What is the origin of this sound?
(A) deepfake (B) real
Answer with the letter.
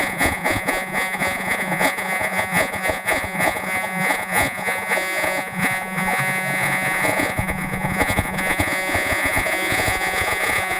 A